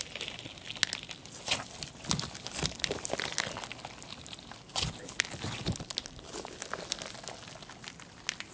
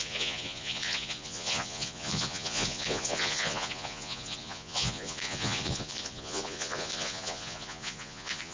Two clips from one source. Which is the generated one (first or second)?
second